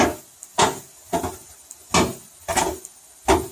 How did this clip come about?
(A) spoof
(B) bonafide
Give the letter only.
B